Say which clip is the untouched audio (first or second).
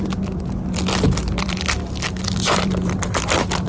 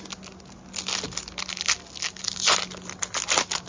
second